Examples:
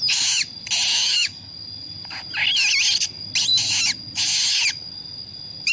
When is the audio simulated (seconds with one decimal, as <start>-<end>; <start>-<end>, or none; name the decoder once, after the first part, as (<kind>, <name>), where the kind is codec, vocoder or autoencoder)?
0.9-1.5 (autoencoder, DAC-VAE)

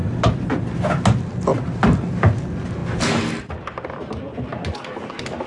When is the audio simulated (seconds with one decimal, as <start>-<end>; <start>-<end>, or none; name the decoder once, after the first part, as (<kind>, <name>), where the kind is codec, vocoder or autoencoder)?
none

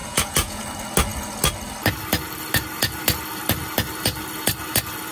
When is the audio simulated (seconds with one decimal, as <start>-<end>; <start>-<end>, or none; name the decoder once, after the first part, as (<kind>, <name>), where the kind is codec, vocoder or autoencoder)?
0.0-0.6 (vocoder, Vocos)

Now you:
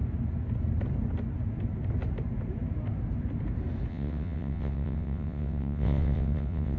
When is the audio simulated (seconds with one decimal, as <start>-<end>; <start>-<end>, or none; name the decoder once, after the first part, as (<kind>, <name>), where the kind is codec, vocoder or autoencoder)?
3.9-6.8 (vocoder, WaveNeXt)